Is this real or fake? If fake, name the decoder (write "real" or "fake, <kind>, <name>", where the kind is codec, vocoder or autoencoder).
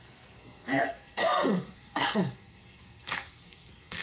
fake, codec, SNAC